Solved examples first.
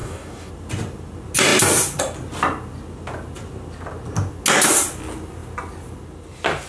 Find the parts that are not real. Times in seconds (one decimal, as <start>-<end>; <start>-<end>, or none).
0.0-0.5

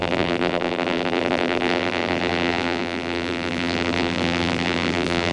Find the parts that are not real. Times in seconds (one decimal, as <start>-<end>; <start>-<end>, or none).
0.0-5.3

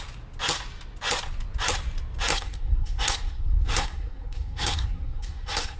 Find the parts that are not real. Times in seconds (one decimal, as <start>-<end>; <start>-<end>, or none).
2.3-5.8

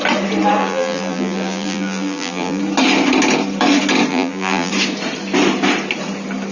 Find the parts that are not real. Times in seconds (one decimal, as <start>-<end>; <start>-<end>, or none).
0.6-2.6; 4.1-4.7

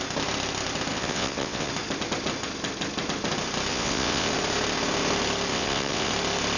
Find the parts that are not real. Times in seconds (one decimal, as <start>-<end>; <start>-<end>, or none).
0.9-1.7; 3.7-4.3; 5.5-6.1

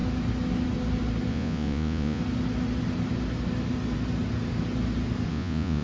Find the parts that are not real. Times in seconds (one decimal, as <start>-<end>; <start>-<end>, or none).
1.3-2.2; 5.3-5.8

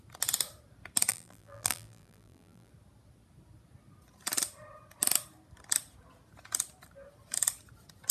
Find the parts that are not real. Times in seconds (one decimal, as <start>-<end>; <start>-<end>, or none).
1.1-2.7

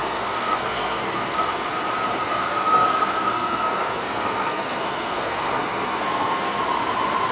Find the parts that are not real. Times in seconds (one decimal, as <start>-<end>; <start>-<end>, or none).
0.0-1.7; 2.2-6.6